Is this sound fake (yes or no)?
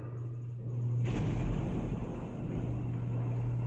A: no